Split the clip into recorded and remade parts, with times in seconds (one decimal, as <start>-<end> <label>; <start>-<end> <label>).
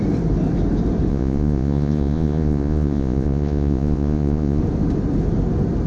0.0-1.1 recorded; 1.1-4.6 remade; 4.6-5.9 recorded